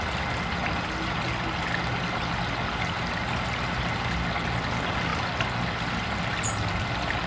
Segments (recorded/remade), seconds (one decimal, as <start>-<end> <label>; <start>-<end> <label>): 0.0-7.3 recorded